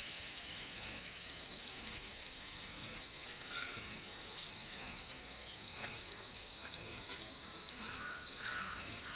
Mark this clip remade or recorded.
remade